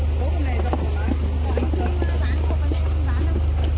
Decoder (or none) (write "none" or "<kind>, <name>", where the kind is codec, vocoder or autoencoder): none